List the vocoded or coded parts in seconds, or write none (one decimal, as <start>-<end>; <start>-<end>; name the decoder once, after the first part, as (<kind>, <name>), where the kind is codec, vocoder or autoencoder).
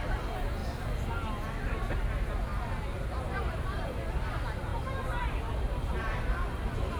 none